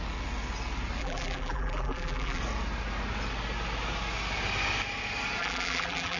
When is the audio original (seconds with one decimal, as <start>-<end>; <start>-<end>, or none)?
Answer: 0.0-1.0; 2.4-5.4